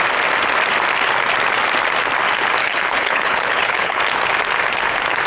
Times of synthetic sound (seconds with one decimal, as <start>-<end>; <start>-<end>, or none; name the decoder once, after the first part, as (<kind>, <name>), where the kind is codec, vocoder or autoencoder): 2.6-4.0 (codec, HILCodec)